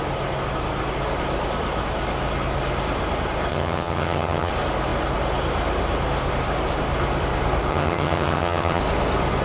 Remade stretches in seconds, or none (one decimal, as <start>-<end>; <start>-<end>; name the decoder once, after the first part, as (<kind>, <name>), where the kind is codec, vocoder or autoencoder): 3.5-4.5 (vocoder, HiFi-GAN); 7.7-8.8

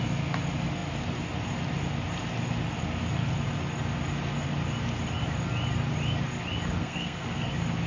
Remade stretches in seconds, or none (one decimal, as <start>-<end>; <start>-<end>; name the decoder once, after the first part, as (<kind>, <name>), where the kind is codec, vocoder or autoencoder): 6.8-7.5 (codec, SNAC)

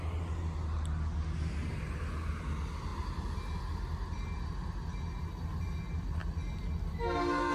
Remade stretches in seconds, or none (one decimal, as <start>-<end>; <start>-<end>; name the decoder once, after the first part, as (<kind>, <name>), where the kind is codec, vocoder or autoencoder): none

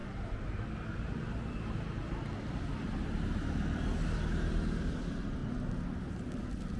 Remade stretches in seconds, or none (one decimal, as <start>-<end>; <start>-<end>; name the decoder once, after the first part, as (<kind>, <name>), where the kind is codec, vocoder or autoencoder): none